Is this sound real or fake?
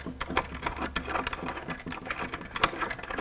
real